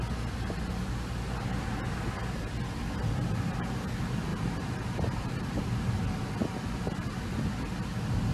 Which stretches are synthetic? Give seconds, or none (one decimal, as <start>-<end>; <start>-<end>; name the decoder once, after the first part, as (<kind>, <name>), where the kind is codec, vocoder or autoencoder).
none